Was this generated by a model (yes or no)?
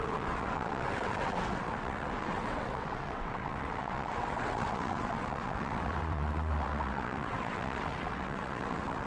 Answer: yes